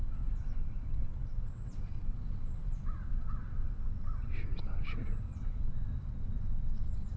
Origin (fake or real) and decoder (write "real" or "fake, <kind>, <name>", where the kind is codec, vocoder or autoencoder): fake, vocoder, WaveNeXt